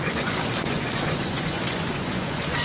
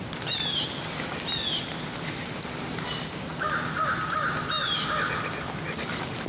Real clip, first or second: second